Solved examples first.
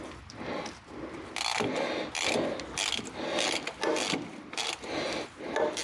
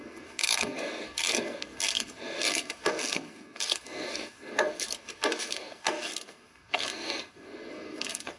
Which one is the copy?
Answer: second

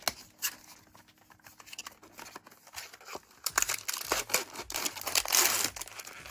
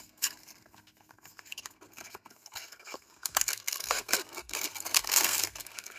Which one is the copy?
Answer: second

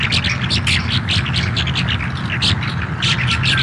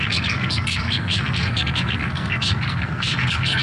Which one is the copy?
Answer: second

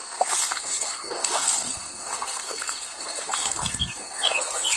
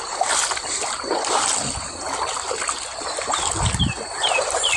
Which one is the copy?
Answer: first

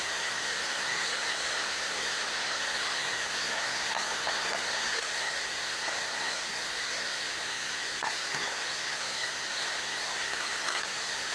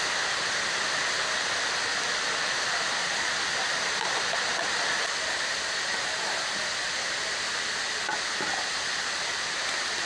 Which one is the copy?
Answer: first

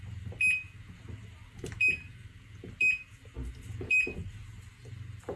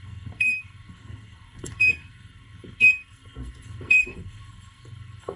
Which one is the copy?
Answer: second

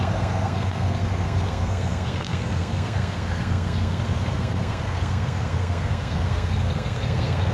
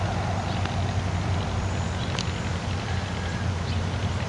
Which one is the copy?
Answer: first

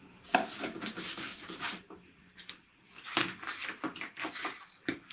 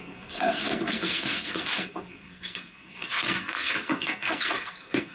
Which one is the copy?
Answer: second